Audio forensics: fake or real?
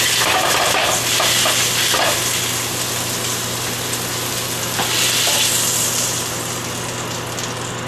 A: real